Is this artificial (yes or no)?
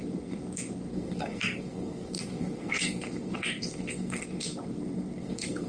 yes